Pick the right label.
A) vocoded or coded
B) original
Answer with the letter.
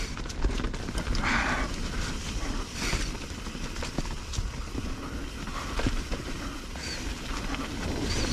B